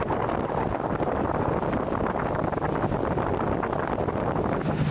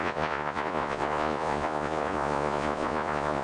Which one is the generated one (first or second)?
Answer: second